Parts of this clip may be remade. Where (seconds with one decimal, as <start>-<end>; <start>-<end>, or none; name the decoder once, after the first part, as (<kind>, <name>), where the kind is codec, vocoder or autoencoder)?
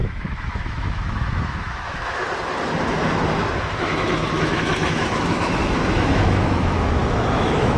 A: 0.0-2.2 (autoencoder, DAC-VAE); 3.6-7.8